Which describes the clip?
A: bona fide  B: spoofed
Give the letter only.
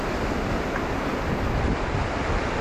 A